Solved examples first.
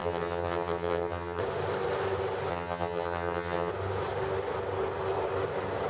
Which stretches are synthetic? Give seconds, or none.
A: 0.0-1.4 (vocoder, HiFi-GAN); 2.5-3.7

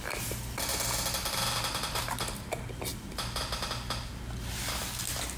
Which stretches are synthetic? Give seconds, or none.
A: none